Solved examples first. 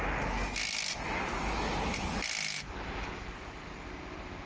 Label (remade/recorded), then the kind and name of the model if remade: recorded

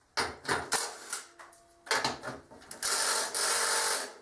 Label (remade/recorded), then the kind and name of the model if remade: recorded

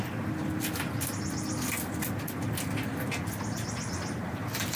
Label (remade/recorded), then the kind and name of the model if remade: recorded